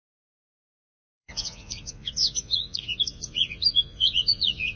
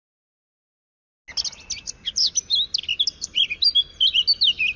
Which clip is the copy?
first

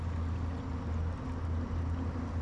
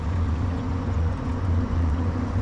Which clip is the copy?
second